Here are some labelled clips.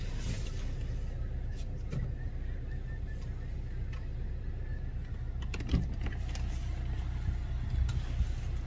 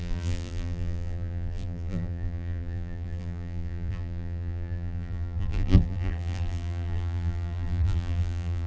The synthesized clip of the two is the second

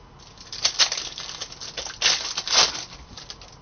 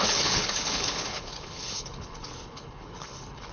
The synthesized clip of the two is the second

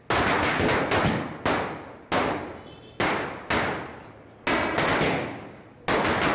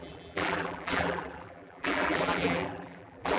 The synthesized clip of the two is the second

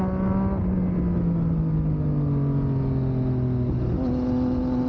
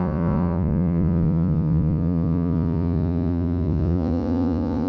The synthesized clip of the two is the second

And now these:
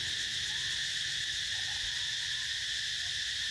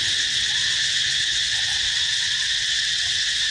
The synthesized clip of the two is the second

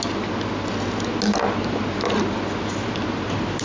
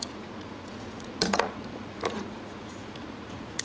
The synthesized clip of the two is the second